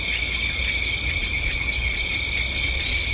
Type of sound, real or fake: real